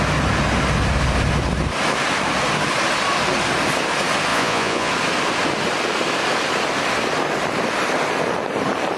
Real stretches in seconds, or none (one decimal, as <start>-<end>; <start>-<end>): 0.0-4.3; 4.9-9.0